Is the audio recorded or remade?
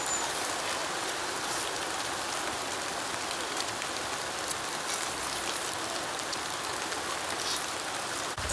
recorded